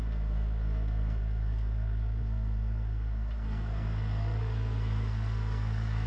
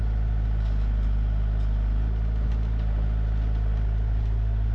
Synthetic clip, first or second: first